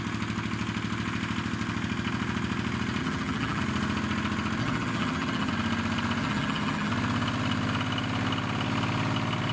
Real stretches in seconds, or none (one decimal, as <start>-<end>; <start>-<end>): 0.0-3.0; 3.6-4.6; 5.5-6.2; 6.9-9.5